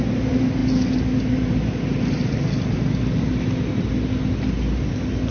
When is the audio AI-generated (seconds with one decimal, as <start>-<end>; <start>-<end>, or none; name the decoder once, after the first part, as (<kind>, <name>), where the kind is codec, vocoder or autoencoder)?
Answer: none